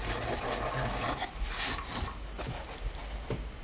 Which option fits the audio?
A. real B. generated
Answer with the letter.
A